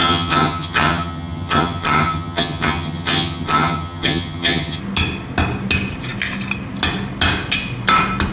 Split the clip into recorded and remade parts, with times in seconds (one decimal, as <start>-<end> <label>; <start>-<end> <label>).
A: 0.0-4.8 remade; 4.8-8.3 recorded